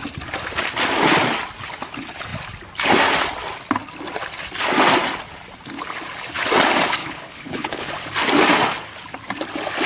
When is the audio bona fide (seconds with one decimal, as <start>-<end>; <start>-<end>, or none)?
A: 0.0-7.0; 7.9-9.9